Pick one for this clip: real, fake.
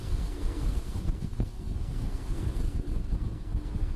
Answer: fake